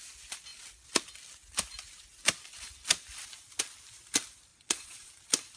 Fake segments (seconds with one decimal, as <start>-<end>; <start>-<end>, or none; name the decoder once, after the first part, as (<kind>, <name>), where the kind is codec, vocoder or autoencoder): 4.5-5.1 (vocoder, Vocos)